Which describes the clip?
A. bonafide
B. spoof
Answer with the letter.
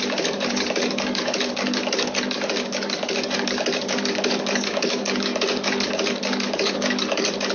B